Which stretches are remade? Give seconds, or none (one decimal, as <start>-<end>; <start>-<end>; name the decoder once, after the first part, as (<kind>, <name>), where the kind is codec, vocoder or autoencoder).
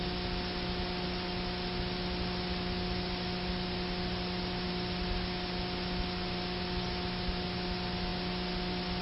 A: none